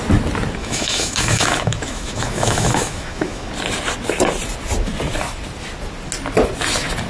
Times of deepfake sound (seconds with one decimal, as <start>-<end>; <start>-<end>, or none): 0.6-3.5